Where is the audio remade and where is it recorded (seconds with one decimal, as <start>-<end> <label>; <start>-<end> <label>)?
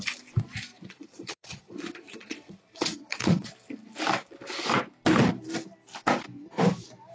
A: 0.0-0.7 recorded; 0.7-3.5 remade; 3.5-7.1 recorded